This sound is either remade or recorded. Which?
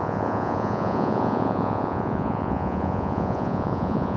remade